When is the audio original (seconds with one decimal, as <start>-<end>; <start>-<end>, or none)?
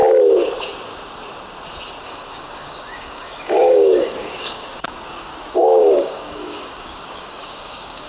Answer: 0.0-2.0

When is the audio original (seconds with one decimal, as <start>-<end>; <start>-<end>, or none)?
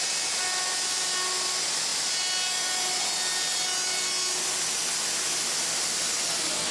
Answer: 0.0-6.7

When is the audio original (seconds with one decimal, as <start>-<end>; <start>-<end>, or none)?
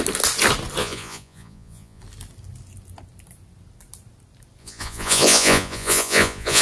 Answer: 0.0-0.8; 2.0-4.6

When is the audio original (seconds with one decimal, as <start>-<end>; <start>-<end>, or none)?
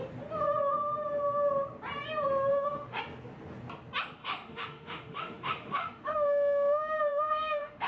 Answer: 0.0-2.5; 3.0-4.2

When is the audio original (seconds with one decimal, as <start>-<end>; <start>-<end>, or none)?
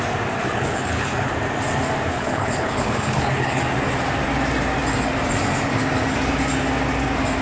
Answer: 0.0-0.4; 1.3-2.1; 3.6-7.4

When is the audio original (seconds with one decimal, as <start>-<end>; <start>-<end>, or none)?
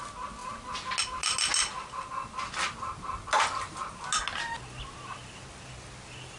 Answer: 0.0-6.4